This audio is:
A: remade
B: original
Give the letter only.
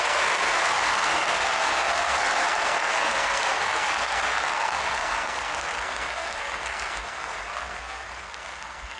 A